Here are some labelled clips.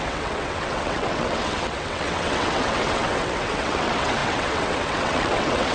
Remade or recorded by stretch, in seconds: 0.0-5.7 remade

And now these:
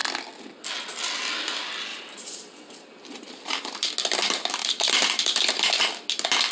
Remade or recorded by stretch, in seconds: 0.0-1.9 recorded; 1.9-3.9 remade; 3.9-4.6 recorded; 4.6-5.7 remade; 5.7-6.5 recorded

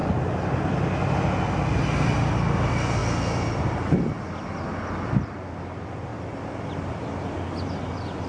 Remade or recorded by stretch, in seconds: 0.0-8.3 recorded

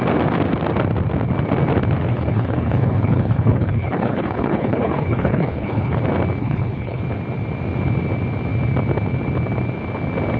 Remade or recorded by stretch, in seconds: 0.0-2.1 recorded; 2.1-6.0 remade; 6.0-6.4 recorded; 6.4-7.0 remade; 7.0-10.4 recorded

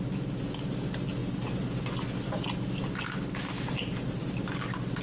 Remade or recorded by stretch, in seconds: 0.0-5.0 recorded